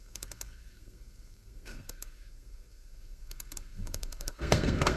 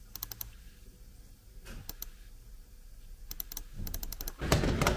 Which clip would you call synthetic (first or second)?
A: first